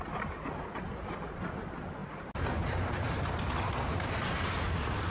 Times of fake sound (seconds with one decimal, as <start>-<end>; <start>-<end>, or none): none